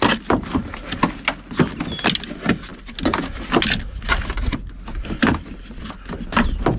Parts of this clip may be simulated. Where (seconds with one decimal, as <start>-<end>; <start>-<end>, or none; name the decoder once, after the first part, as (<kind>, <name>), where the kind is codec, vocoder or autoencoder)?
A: none